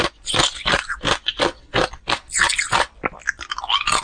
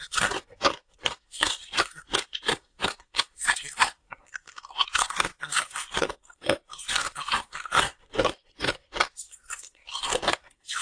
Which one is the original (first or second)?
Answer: first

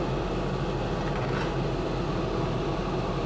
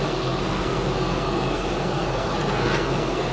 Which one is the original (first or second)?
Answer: first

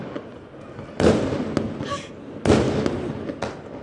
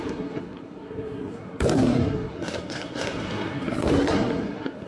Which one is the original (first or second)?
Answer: first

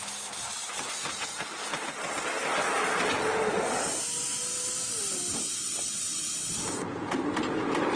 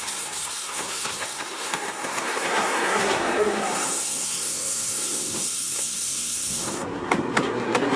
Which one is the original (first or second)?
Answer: first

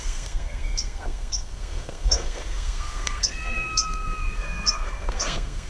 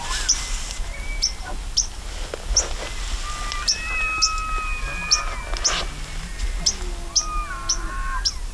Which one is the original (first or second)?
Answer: second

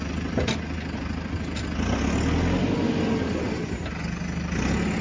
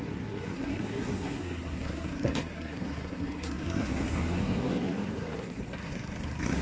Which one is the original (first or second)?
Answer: first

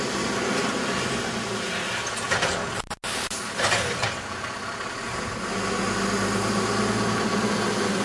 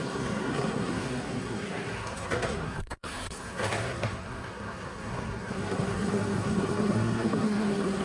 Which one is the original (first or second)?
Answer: first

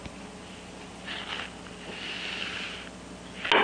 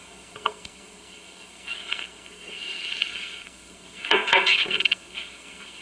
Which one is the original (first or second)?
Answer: first